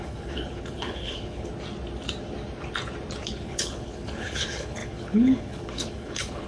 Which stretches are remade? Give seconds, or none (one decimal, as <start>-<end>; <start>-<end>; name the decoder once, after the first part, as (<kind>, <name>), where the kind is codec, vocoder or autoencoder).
0.0-1.5 (codec, HILCodec); 3.2-6.5